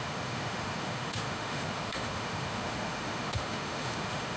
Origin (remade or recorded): remade